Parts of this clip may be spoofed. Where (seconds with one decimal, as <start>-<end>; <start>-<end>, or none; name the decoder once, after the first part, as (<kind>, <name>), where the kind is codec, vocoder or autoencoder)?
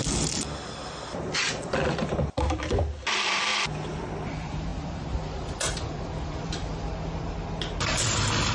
none